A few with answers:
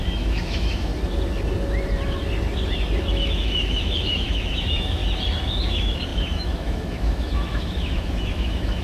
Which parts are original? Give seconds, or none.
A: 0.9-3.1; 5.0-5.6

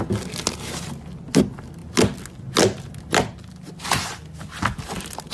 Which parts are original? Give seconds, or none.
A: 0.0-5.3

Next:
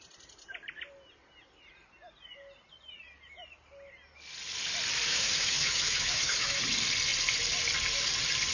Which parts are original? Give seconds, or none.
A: 0.0-5.1; 6.6-8.5

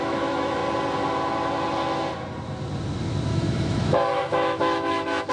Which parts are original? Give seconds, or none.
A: 0.6-3.3

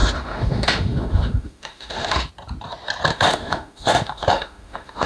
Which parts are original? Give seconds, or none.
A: 2.3-3.1

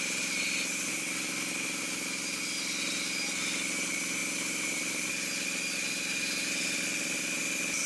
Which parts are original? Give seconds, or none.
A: 0.0-7.9

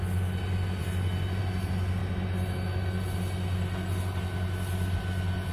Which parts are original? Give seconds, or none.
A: 0.0-5.5

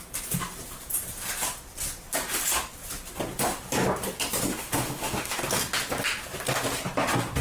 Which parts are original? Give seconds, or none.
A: 0.0-4.5; 5.4-7.4